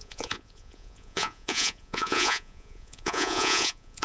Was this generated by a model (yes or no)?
yes